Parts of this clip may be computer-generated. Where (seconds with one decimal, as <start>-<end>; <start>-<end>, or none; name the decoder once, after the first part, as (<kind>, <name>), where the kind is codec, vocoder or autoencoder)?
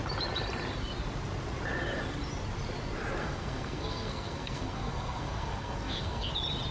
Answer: 3.2-6.3 (codec, SNAC)